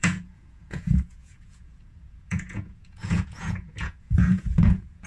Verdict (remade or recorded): remade